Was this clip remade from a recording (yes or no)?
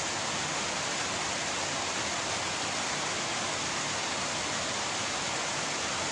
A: no